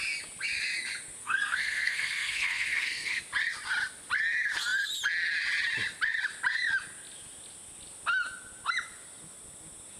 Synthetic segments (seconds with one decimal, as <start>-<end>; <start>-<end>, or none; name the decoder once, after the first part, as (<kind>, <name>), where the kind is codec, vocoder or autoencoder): 1.2-3.2 (codec, SNAC)